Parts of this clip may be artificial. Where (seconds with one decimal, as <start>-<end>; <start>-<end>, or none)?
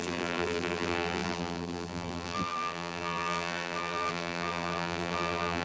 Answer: 0.0-5.6